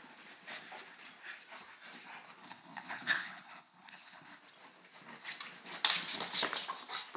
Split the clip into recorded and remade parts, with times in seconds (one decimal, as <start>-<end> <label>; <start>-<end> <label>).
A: 0.0-2.4 recorded; 2.4-4.4 remade; 4.4-7.2 recorded